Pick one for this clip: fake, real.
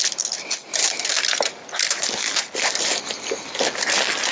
real